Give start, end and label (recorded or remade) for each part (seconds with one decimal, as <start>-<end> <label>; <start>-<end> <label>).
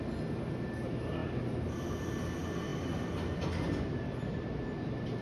0.0-5.2 recorded